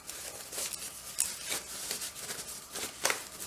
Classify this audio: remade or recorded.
recorded